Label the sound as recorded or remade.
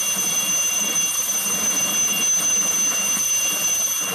recorded